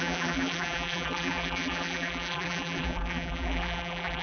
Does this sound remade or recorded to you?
remade